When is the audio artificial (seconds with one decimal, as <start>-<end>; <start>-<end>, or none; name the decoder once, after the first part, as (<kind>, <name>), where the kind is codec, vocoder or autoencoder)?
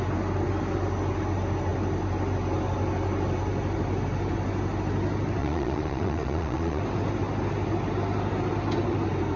5.4-6.8 (vocoder, Vocos)